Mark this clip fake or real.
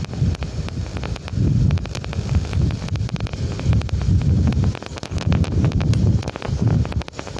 real